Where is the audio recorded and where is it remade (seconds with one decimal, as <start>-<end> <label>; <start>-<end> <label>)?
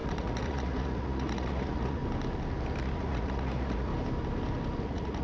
0.0-2.0 remade; 2.0-2.8 recorded; 2.8-3.9 remade; 3.9-4.8 recorded; 4.8-5.2 remade